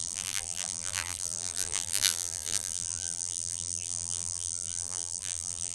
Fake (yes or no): yes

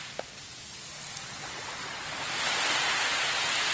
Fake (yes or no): no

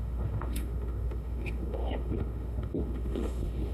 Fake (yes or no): yes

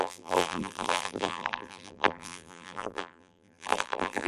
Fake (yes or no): yes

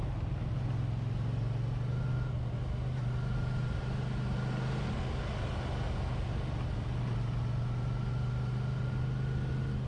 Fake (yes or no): no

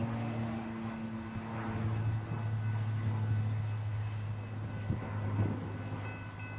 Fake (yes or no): no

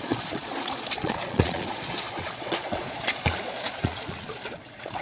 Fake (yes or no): yes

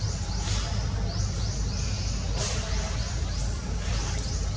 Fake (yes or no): no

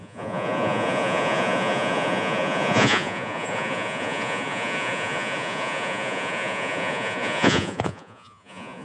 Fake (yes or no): yes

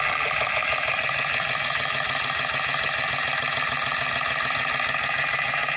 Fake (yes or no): no